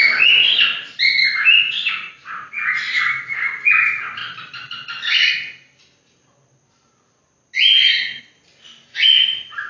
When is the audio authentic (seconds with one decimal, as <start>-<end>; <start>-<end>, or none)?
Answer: 0.0-9.7